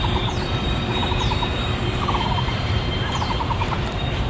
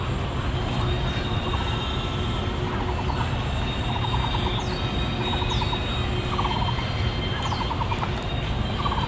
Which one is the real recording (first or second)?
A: second